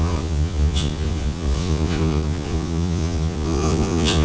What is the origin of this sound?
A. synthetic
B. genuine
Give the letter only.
A